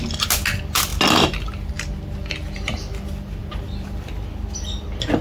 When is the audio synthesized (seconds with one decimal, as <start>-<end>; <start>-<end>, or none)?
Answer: none